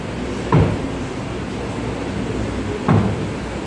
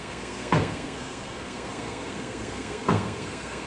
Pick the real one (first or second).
first